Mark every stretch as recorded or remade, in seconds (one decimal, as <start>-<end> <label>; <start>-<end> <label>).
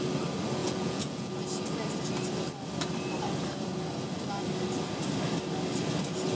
0.0-0.6 recorded; 0.6-1.3 remade; 1.3-6.4 recorded